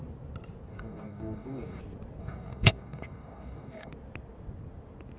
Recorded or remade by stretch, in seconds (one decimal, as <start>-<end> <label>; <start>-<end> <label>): 0.0-0.7 recorded; 0.7-1.8 remade; 1.8-2.2 recorded; 2.2-3.9 remade; 3.9-5.2 recorded

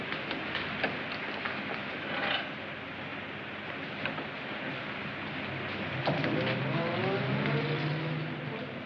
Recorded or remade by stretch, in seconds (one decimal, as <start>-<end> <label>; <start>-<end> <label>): 0.0-8.9 recorded

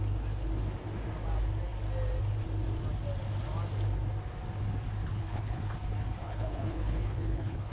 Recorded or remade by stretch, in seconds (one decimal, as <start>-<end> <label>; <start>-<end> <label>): 0.0-5.1 recorded; 5.1-5.6 remade; 5.6-6.2 recorded; 6.2-7.7 remade